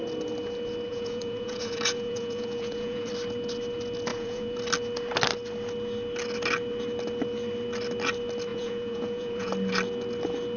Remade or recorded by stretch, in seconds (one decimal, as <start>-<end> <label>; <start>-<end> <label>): 0.0-0.9 recorded; 0.9-3.1 remade; 3.1-4.1 recorded; 4.1-4.6 remade; 4.6-8.5 recorded; 8.5-9.5 remade; 9.5-10.6 recorded